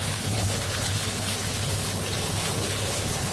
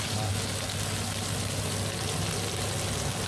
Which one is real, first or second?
second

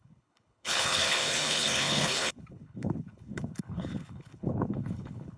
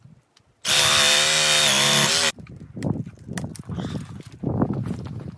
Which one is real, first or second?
second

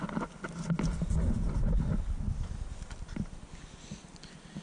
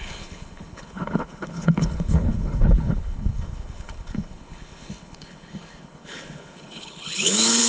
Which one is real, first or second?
first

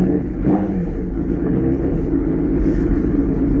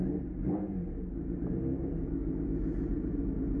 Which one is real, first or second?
second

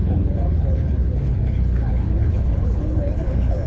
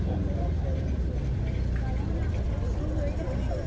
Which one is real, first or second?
second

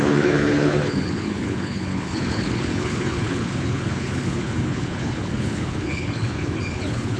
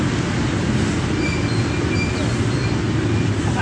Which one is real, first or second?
second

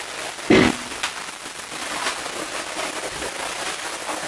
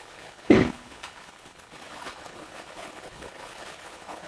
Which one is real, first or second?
first